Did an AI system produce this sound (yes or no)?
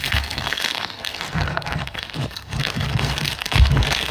yes